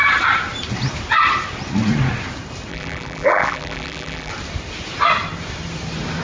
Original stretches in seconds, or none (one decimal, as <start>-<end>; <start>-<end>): 0.0-2.7; 4.3-6.2